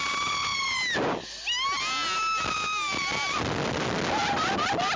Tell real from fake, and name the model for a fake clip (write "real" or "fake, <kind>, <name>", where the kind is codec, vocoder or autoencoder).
real